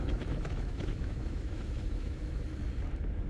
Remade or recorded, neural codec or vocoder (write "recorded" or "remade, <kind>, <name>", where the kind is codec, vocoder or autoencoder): remade, autoencoder, DAC-VAE